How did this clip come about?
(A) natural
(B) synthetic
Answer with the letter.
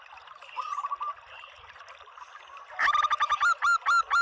A